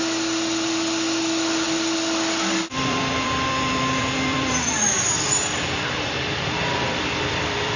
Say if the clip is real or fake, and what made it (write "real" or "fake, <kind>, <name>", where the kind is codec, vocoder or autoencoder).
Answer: fake, vocoder, BigVGAN v2